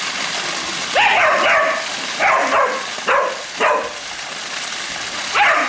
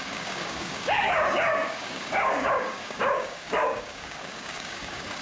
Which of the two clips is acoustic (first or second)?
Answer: first